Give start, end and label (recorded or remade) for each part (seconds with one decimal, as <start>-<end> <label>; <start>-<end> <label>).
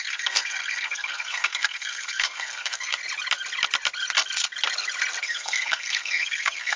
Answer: 0.0-3.0 remade; 3.0-5.2 recorded; 5.2-6.8 remade